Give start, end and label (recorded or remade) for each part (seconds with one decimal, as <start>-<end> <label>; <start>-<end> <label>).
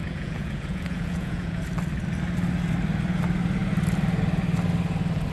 0.0-1.6 remade; 1.6-5.3 recorded